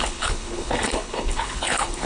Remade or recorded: remade